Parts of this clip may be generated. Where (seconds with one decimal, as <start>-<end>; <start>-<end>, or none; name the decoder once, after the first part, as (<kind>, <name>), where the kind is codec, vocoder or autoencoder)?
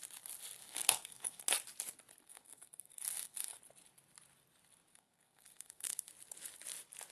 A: 0.6-1.4 (codec, SNAC); 2.2-3.6; 4.9-6.1